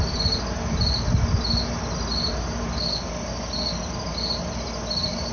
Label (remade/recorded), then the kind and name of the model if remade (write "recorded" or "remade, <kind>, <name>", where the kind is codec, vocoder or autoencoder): recorded